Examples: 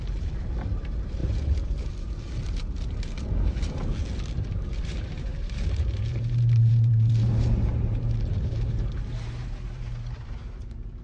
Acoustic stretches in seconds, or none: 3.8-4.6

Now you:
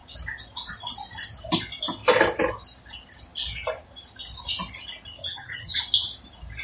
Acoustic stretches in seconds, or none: 0.0-5.2; 5.8-6.6